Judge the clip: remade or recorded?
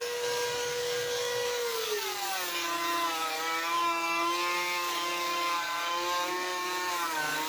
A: remade